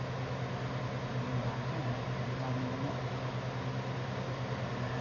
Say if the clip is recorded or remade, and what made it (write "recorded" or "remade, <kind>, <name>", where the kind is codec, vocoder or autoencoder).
recorded